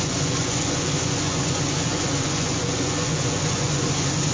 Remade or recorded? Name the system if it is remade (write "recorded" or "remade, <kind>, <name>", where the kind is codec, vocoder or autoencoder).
remade, vocoder, Vocos